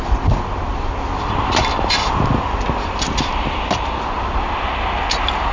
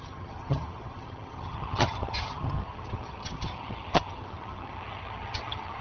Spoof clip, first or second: second